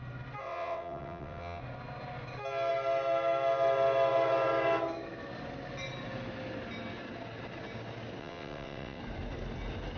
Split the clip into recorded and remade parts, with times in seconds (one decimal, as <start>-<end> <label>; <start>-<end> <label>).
0.0-0.4 recorded; 0.4-1.6 remade; 1.6-8.2 recorded; 8.2-9.0 remade; 9.0-10.0 recorded